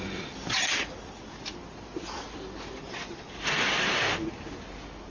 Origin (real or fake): real